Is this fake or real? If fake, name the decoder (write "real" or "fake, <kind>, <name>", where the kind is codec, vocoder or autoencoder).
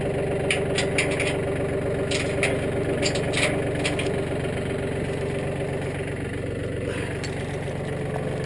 real